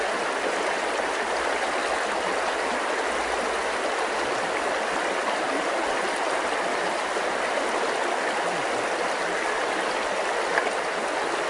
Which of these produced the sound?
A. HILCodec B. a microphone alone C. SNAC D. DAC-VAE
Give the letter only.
B